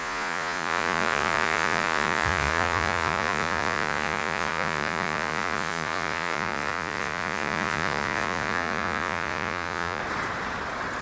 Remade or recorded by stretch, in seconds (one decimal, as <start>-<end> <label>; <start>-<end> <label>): 0.0-10.0 remade; 10.0-11.0 recorded